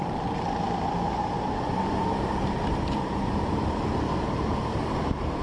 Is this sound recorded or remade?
remade